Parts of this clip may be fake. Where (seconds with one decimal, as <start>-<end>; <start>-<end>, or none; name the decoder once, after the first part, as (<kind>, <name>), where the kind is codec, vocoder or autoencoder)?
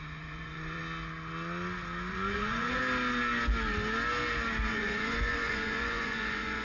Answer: 0.0-0.8 (vocoder, Vocos); 2.1-2.8; 4.7-6.6